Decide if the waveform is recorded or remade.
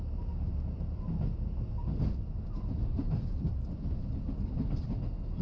recorded